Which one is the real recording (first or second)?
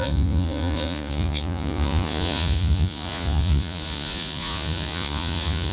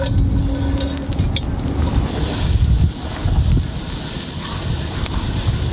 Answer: second